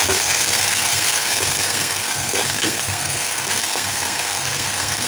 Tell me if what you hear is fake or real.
fake